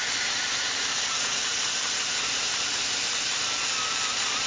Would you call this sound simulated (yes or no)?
no